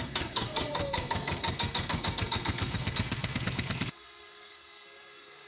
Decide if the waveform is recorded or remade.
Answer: remade